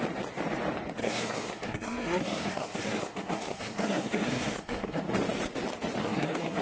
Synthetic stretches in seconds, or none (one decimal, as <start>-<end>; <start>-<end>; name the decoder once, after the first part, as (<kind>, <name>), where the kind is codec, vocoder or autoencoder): 1.0-5.0 (codec, SNAC); 6.0-6.6